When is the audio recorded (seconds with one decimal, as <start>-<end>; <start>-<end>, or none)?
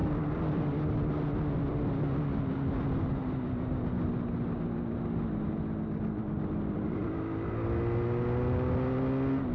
0.0-9.5